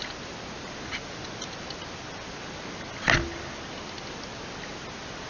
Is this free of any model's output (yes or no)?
yes